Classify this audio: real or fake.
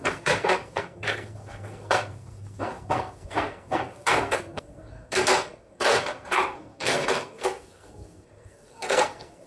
fake